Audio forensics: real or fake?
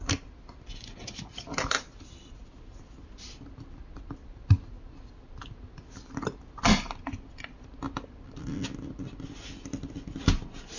real